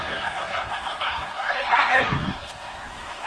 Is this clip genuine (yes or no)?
no